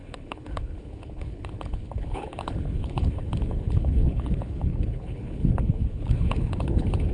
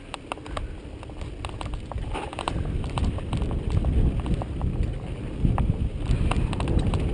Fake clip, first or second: first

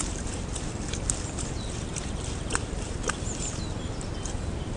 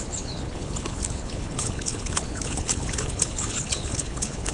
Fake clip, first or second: second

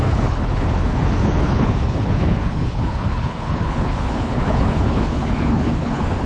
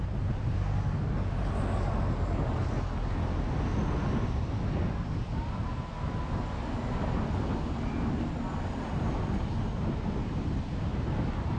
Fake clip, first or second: first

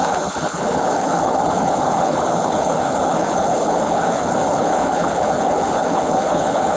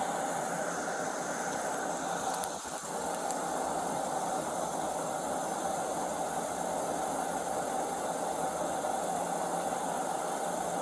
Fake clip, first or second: first